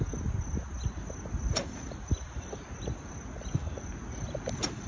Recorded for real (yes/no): yes